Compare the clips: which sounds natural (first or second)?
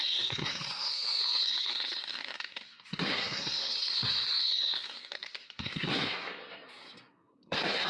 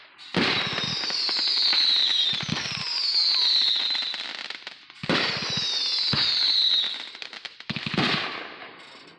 second